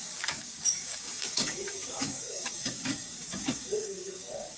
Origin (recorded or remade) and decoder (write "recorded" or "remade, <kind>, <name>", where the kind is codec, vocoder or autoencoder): remade, codec, DAC